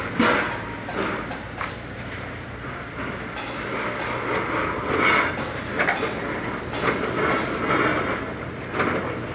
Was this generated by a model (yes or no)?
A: no